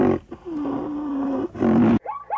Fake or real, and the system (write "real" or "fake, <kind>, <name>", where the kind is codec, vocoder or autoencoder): fake, vocoder, BigVGAN v2